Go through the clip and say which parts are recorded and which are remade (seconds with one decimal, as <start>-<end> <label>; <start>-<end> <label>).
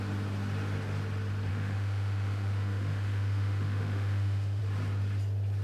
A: 0.0-1.5 recorded; 1.5-4.6 remade; 4.6-5.6 recorded